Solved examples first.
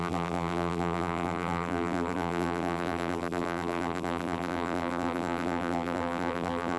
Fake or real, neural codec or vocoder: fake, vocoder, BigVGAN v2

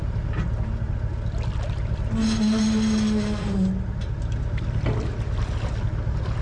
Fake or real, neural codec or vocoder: real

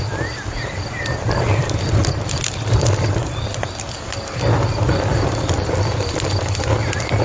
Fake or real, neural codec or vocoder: fake, vocoder, BigVGAN v2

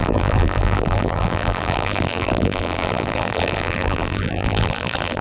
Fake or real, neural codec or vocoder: fake, vocoder, BigVGAN v2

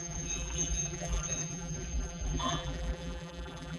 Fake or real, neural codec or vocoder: fake, vocoder, BigVGAN v2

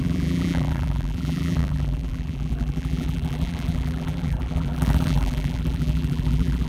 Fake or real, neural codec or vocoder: fake, vocoder, BigVGAN v2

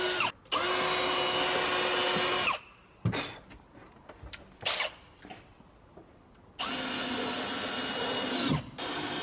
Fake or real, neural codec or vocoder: real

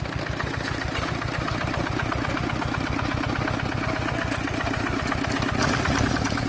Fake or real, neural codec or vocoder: real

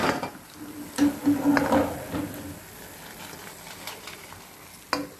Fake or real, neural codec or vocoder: real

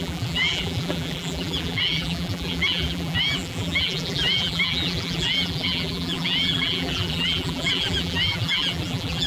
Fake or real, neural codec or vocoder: fake, vocoder, BigVGAN v2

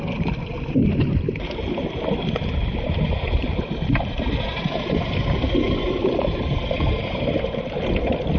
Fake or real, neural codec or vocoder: fake, vocoder, BigVGAN v2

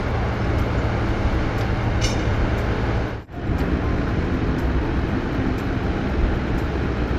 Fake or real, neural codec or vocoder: real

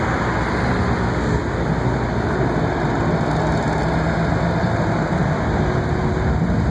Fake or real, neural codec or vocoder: real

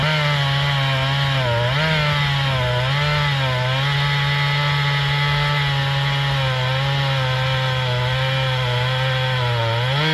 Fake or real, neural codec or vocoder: real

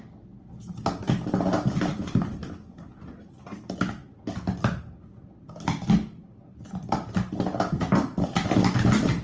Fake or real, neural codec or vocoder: real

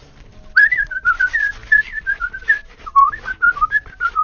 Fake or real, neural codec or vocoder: real